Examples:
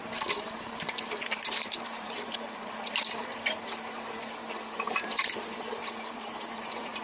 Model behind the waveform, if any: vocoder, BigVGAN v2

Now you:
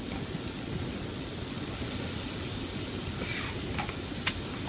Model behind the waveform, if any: none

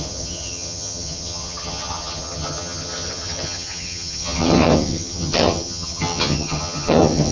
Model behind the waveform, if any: vocoder, HiFi-GAN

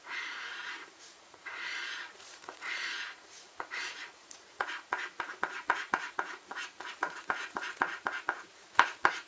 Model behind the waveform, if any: vocoder, Vocos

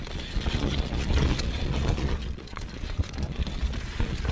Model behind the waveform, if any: vocoder, Vocos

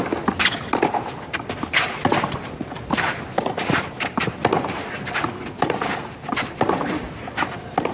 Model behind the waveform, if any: none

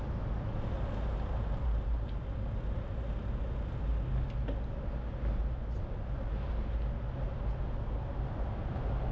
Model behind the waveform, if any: none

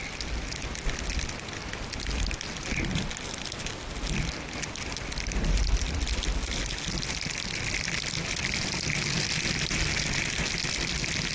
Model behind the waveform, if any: none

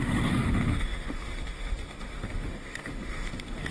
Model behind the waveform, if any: autoencoder, DAC-VAE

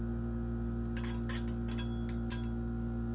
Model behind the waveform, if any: none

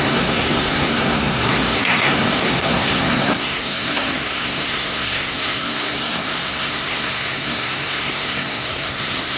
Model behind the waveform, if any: codec, SNAC